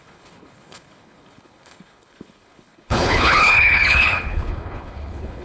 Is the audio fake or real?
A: fake